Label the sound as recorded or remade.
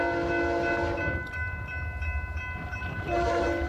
recorded